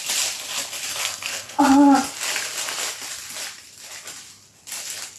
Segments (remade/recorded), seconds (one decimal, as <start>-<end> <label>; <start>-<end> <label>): 0.0-0.9 recorded; 0.9-1.6 remade; 1.6-5.2 recorded

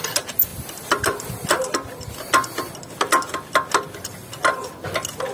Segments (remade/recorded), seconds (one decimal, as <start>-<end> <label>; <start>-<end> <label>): 0.0-5.3 recorded